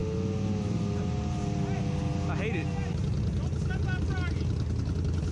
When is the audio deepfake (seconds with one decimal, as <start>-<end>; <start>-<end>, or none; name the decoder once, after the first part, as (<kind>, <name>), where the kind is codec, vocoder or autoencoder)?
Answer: none